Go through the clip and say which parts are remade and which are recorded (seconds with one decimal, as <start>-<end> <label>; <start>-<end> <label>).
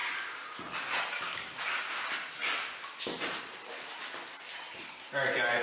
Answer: 0.0-5.6 recorded